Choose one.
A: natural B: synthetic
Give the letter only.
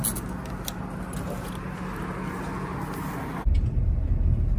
A